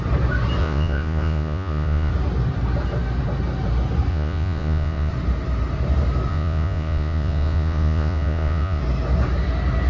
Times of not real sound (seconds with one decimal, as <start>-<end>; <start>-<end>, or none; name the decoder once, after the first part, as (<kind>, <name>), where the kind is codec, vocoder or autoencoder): 0.6-2.1 (vocoder, Vocos); 4.1-5.1; 6.3-8.8